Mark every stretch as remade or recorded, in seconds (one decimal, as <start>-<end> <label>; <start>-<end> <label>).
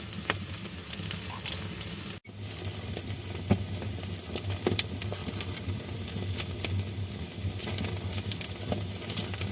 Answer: 0.0-9.5 recorded